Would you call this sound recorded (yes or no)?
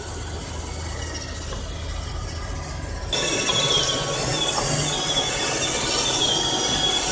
yes